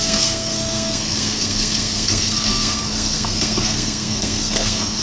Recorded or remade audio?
remade